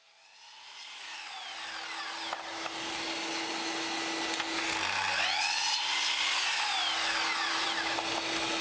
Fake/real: real